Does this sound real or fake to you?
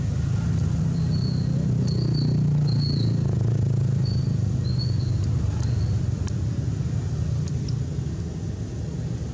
real